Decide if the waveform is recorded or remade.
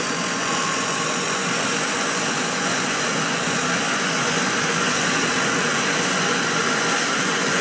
remade